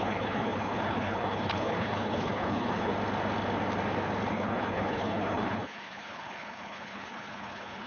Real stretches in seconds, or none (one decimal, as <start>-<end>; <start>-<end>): 2.9-4.3